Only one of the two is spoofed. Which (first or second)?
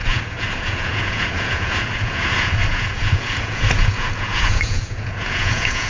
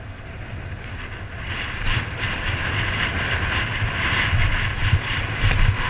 first